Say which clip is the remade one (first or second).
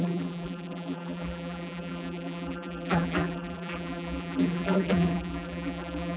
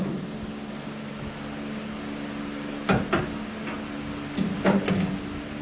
first